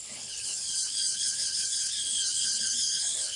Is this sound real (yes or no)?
no